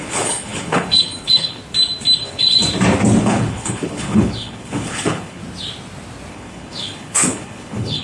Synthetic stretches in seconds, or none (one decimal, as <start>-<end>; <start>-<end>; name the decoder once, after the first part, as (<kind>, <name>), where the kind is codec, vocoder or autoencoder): 0.0-1.6 (codec, HILCodec); 2.2-2.6; 3.2-5.4; 6.3-8.0